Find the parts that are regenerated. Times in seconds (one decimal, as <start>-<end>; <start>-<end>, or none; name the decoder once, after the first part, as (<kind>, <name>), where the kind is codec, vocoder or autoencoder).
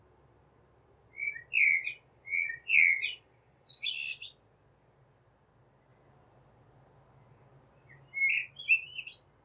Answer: 1.7-3.9 (vocoder, Vocos)